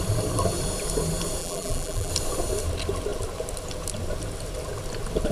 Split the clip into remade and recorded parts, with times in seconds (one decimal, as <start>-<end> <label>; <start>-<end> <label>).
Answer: 0.0-1.4 recorded; 1.4-2.1 remade; 2.1-5.3 recorded